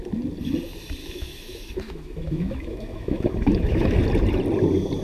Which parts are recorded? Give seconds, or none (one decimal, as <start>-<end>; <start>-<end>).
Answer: 0.0-1.0; 4.0-5.0